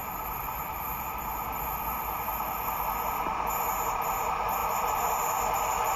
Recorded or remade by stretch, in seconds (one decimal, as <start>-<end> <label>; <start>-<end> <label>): 0.0-0.8 remade; 0.8-4.6 recorded; 4.6-5.6 remade; 5.6-6.0 recorded